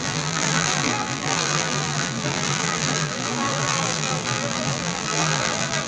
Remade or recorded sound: remade